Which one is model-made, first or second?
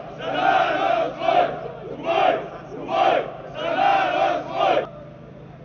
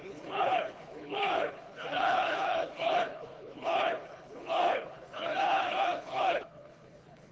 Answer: second